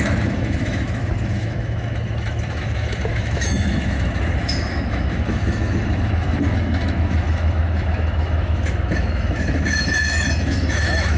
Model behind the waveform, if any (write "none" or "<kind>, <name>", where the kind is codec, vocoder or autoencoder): autoencoder, DAC-VAE